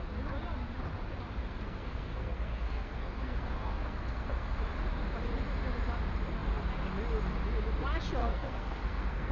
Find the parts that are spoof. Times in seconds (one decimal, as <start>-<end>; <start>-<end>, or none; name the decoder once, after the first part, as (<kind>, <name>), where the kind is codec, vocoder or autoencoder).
1.4-4.6 (codec, SNAC); 8.2-9.3